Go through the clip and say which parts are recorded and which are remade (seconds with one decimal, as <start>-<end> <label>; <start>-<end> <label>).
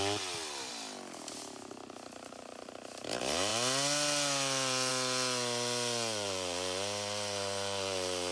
0.0-8.3 recorded